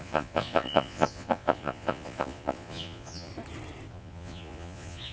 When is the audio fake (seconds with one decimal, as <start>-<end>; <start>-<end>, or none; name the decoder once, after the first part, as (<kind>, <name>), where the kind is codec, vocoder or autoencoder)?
0.0-3.3 (vocoder, Vocos); 3.9-5.1